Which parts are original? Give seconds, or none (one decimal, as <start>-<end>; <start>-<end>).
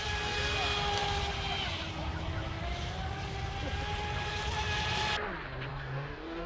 0.0-5.7